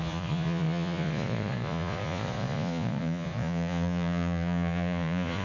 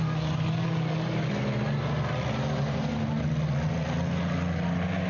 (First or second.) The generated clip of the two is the first